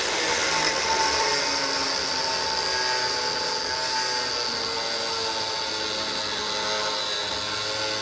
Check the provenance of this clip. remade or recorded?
recorded